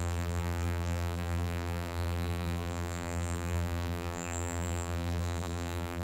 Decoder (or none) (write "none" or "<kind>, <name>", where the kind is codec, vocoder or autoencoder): vocoder, BigVGAN v2